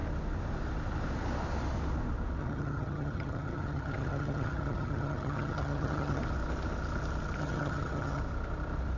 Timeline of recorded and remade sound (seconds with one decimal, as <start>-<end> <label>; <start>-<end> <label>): 0.0-2.4 recorded; 2.4-6.2 remade; 6.2-7.4 recorded; 7.4-8.2 remade; 8.2-9.0 recorded